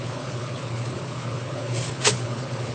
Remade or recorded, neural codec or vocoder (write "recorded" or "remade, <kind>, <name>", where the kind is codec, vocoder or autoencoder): remade, codec, HILCodec